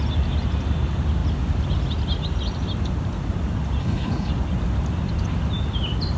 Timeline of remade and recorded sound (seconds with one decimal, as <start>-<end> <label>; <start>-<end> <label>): 0.0-3.8 recorded; 3.8-4.3 remade; 4.3-6.2 recorded